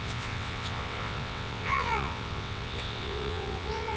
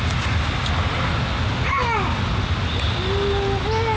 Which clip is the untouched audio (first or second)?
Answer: second